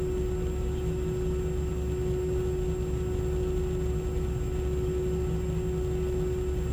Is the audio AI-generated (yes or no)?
no